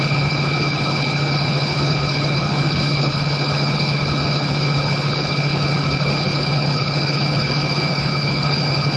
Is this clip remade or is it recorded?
remade